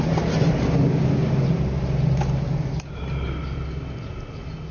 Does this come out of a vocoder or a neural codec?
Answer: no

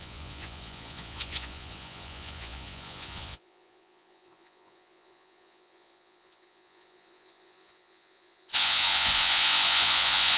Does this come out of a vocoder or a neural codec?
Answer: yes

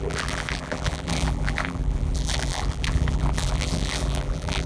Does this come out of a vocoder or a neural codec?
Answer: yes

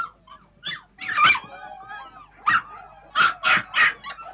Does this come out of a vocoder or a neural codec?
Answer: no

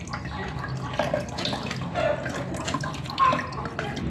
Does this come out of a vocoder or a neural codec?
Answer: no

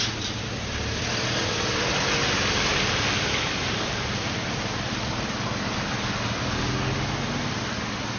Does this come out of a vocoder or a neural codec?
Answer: no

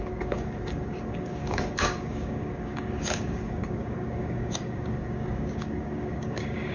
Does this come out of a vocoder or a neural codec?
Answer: yes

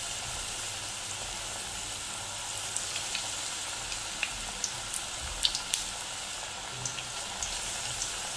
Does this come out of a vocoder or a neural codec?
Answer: no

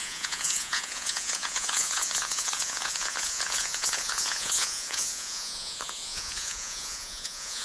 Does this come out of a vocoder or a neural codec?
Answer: yes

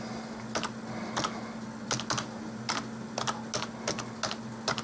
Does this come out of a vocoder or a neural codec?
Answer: no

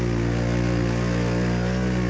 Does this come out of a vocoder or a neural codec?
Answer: no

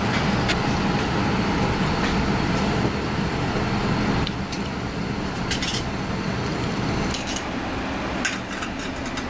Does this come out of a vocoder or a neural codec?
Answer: no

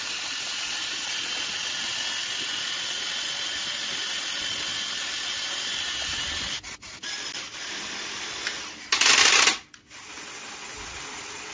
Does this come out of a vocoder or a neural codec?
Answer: no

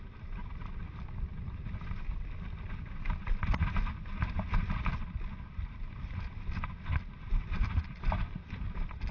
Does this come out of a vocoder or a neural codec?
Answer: no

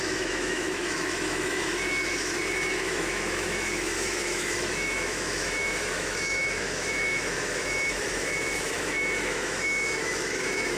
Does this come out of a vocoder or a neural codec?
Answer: yes